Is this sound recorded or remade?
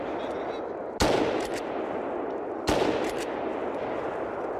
recorded